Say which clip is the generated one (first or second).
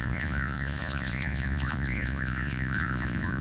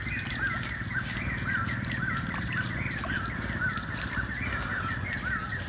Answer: first